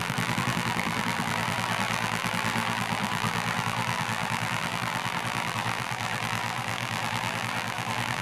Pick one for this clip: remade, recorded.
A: remade